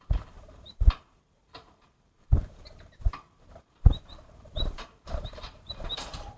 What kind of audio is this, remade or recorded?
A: remade